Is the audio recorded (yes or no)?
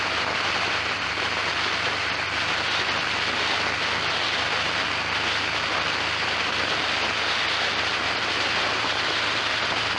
yes